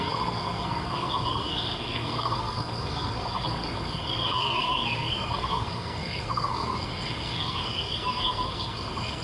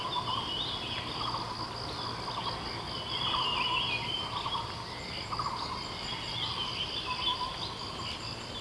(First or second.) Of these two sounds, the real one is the second